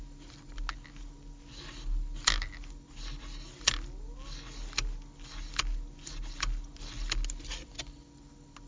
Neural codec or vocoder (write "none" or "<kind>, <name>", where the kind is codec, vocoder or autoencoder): none